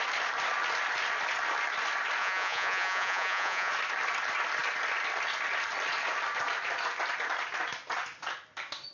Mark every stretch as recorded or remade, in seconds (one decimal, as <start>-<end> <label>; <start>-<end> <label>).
0.0-2.2 recorded; 2.2-3.7 remade; 3.7-8.9 recorded